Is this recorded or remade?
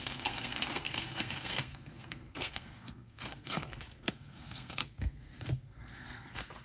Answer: remade